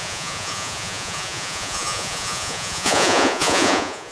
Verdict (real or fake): fake